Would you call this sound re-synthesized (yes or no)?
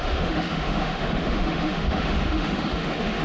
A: yes